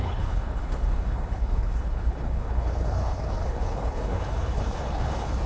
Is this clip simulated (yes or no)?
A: yes